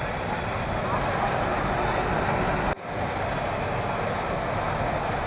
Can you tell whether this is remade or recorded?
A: recorded